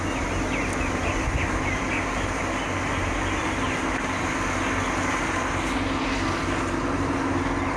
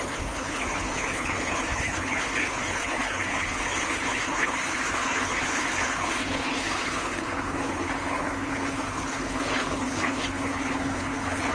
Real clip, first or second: first